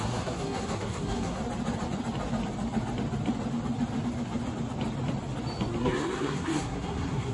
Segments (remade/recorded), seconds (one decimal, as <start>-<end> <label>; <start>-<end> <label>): 0.0-1.4 remade; 1.4-5.8 recorded; 5.8-7.3 remade